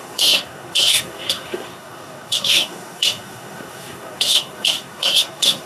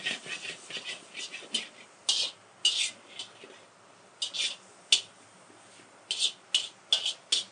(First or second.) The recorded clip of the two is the second